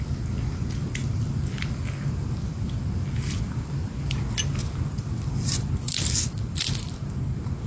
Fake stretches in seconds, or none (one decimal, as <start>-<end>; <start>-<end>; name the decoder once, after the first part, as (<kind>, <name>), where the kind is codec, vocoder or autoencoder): none